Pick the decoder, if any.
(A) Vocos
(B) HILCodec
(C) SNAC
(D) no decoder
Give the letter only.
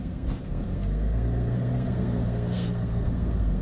C